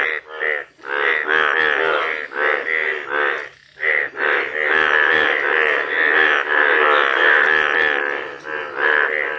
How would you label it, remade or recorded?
recorded